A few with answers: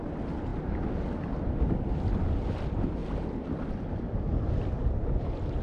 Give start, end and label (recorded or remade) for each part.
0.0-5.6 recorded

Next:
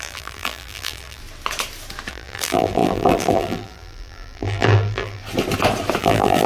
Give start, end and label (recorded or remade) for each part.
0.0-1.2 remade; 1.2-2.1 recorded; 2.1-5.2 remade; 5.2-6.0 recorded; 6.0-6.5 remade

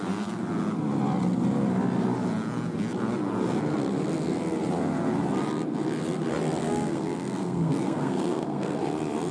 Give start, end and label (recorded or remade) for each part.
0.0-6.6 recorded; 6.6-8.8 remade; 8.8-9.3 recorded

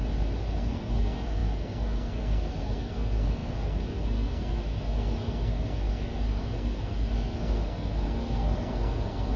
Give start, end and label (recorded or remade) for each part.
0.0-0.5 recorded; 0.5-9.4 remade